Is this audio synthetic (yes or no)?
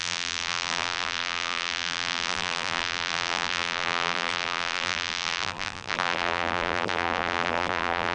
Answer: yes